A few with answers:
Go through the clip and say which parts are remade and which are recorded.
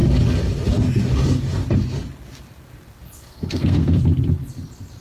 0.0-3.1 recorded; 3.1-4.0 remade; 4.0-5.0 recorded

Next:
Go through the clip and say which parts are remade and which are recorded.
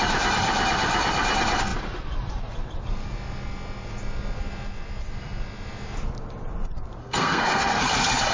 0.0-7.0 recorded; 7.0-7.8 remade; 7.8-8.3 recorded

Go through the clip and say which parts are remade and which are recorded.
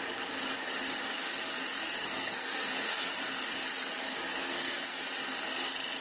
0.0-1.7 recorded; 1.7-3.1 remade; 3.1-4.3 recorded; 4.3-5.0 remade; 5.0-6.0 recorded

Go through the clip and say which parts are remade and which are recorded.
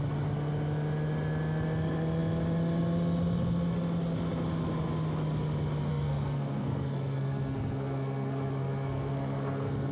0.0-5.9 recorded; 5.9-9.9 remade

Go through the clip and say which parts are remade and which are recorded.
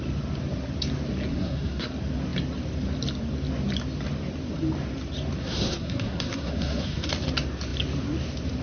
0.0-1.3 recorded; 1.3-1.9 remade; 1.9-5.4 recorded; 5.4-7.1 remade; 7.1-8.6 recorded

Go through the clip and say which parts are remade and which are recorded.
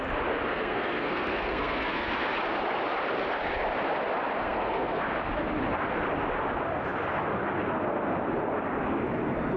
0.0-0.5 recorded; 0.5-2.1 remade; 2.1-4.4 recorded; 4.4-5.1 remade; 5.1-9.6 recorded